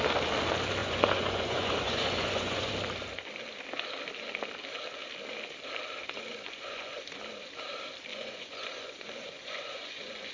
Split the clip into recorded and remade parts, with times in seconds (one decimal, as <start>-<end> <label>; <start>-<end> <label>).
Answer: 0.0-0.8 recorded; 0.8-2.7 remade; 2.7-6.3 recorded; 6.3-7.0 remade; 7.0-8.1 recorded; 8.1-10.3 remade